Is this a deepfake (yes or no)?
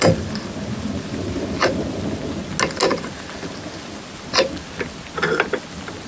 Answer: no